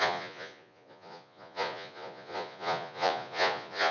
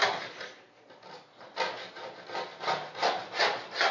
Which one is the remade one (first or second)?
first